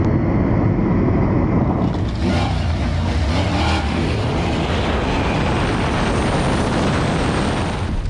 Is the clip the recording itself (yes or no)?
yes